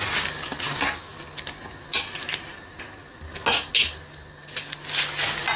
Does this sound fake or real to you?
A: real